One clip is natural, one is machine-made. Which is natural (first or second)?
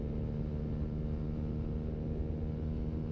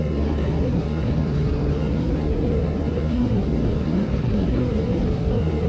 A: first